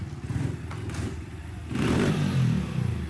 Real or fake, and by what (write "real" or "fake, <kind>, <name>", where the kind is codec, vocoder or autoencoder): real